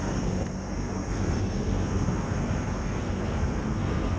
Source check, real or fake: fake